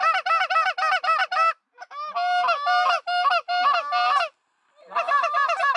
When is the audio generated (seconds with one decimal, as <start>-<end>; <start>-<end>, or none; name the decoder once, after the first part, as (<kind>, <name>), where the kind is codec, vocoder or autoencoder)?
none